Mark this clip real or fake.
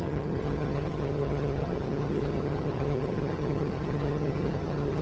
fake